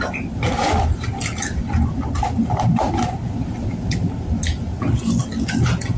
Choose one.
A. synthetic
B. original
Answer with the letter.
B